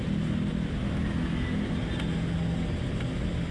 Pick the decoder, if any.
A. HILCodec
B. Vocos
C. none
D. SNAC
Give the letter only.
C